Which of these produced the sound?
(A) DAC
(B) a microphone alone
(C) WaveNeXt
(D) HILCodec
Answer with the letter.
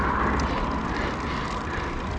B